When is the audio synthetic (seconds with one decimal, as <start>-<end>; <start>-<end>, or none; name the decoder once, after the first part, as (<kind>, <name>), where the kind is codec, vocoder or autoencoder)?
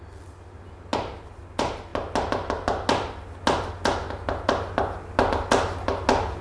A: none